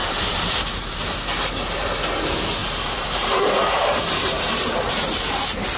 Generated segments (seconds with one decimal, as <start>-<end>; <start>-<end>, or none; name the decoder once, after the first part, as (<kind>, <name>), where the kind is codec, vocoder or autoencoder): 0.0-1.1 (vocoder, BigVGAN v2); 2.6-5.2